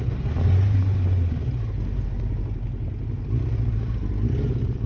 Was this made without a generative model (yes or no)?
yes